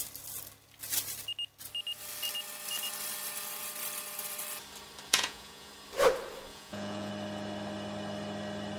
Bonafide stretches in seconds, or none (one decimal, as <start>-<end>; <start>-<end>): 0.0-5.1; 5.7-6.5; 7.1-8.8